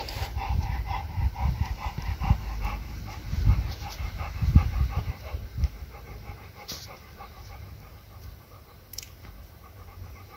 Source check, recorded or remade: remade